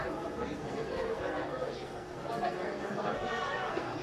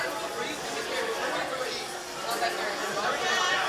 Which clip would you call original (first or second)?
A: second